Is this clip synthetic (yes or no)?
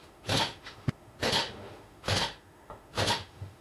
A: yes